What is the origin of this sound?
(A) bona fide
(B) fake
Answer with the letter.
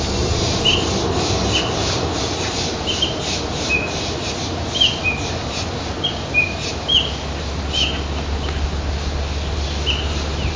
A